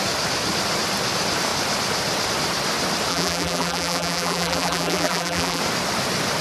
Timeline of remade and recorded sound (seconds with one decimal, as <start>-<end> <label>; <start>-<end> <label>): 0.0-3.1 recorded; 3.1-5.6 remade; 5.6-6.4 recorded